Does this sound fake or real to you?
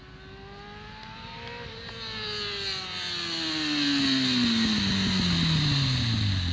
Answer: real